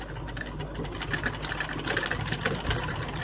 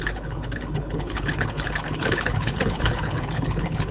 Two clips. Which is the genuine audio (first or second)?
first